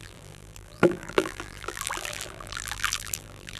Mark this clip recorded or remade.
remade